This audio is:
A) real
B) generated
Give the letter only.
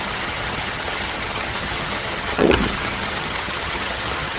B